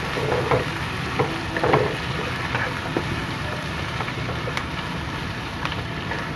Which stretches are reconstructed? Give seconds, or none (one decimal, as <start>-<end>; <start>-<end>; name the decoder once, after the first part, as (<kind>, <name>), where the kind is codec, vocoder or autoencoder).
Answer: 3.2-4.5 (vocoder, BigVGAN v2); 5.2-5.9